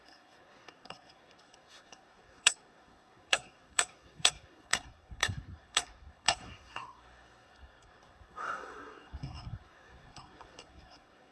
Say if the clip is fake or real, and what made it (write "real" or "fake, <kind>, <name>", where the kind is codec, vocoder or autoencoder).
fake, codec, SNAC